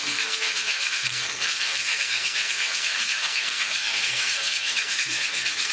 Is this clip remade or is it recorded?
remade